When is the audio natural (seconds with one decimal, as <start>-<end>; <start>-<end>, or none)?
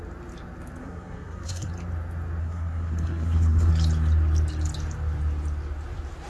0.0-0.8; 1.7-2.4; 3.7-6.3